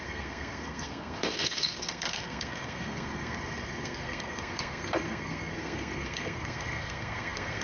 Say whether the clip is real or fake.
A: fake